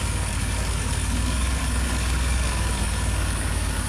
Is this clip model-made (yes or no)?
yes